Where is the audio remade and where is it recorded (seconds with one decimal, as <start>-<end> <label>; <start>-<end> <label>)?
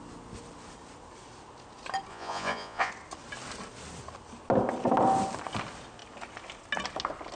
0.0-2.1 recorded; 2.1-2.9 remade; 2.9-7.4 recorded